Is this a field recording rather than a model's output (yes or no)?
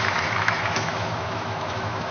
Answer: no